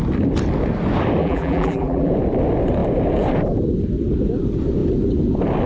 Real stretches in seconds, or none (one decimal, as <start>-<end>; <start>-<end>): 0.0-1.2; 2.1-5.7